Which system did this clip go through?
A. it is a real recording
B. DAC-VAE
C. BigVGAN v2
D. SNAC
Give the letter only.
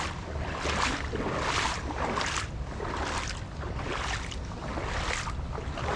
A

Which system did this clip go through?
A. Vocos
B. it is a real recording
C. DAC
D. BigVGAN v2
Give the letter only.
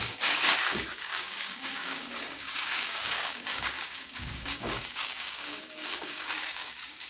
C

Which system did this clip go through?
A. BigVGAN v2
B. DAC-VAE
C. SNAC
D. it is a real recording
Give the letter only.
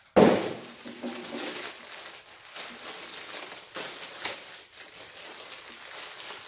D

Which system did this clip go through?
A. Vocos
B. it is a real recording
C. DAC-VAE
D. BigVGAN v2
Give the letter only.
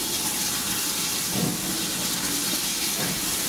B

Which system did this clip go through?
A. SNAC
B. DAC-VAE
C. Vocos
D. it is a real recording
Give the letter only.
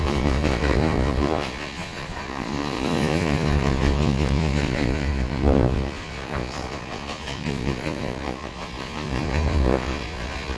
C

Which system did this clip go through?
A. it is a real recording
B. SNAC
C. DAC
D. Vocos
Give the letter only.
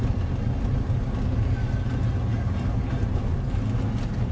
A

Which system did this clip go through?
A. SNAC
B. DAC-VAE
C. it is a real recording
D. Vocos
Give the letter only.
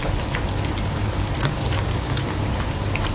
C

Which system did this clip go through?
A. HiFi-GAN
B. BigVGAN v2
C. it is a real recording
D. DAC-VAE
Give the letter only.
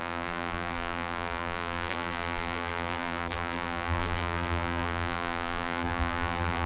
B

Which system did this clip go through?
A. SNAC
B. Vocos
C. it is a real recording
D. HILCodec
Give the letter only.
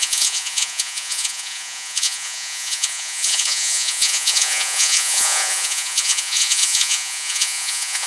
B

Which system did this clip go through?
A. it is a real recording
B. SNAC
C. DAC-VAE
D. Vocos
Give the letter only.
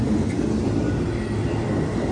A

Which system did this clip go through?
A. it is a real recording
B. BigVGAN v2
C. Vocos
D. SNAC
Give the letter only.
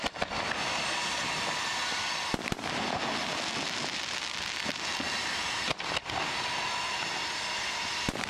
A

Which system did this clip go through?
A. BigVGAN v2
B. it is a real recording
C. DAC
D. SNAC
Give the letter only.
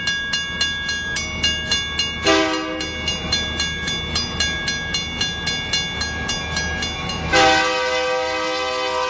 B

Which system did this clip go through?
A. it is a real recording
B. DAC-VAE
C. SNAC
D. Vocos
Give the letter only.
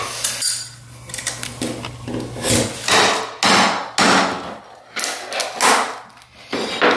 A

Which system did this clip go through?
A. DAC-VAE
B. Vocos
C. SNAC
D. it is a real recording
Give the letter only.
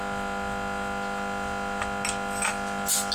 D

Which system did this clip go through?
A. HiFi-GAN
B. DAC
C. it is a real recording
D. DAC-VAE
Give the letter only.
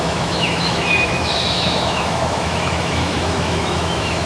D